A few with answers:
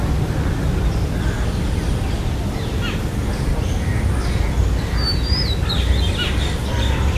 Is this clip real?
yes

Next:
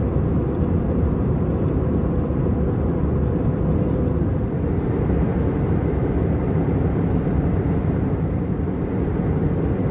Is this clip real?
no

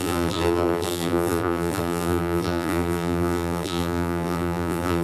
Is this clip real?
no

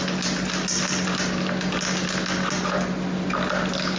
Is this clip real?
yes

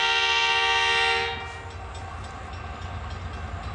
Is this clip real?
yes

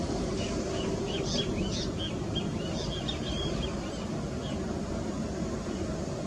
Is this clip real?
yes